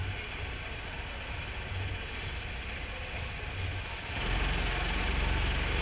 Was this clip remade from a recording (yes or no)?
no